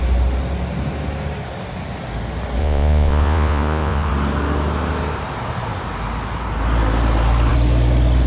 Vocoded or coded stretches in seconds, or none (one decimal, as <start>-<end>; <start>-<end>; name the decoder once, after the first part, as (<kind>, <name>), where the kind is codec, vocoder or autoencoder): 2.6-4.1 (vocoder, Vocos)